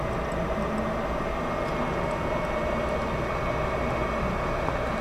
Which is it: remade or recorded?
recorded